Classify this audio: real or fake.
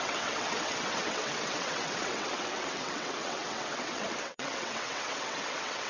fake